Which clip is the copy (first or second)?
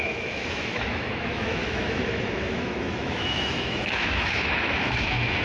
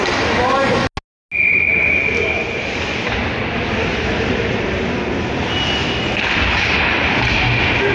first